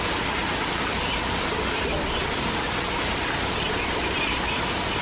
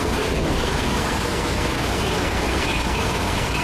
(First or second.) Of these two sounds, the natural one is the first